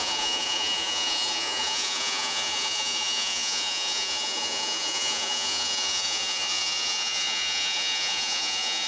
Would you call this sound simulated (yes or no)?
yes